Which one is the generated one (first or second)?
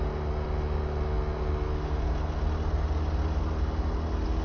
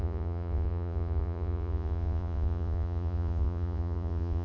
second